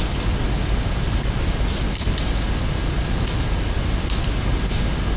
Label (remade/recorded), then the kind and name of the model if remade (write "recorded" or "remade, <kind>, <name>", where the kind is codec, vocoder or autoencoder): recorded